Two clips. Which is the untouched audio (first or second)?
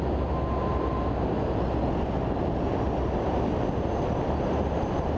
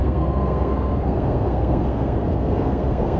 first